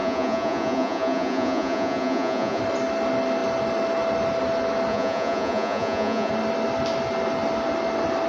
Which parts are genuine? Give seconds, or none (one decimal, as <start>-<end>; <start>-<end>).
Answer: 2.6-4.9; 6.3-8.3